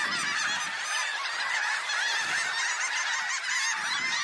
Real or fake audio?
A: real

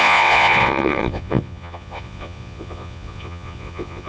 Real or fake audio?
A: fake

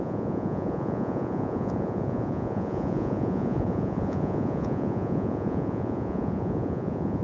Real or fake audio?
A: fake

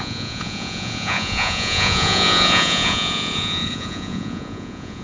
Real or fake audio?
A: fake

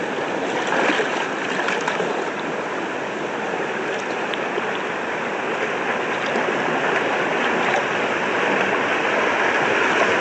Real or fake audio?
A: real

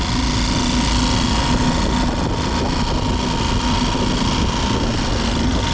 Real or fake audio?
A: real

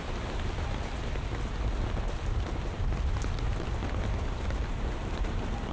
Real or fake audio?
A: real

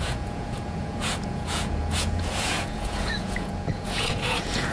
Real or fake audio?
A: fake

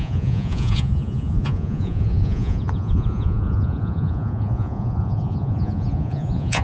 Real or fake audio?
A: fake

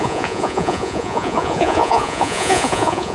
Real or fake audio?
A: fake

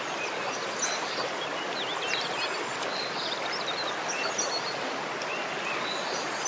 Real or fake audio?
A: real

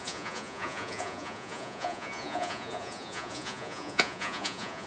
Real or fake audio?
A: fake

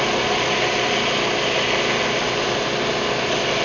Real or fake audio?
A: real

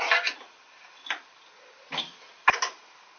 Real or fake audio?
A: real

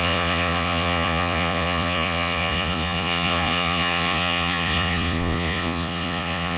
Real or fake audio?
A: fake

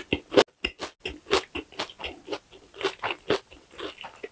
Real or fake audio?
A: real